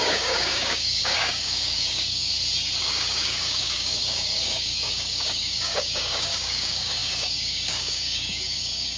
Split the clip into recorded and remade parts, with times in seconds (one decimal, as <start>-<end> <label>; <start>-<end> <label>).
0.0-2.3 remade; 2.3-2.8 recorded; 2.8-9.0 remade